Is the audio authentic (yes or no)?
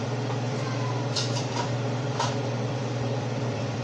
no